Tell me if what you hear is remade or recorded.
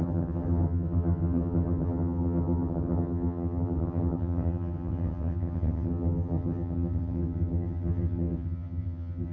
remade